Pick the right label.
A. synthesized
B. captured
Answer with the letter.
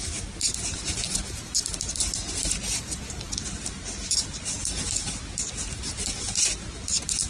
B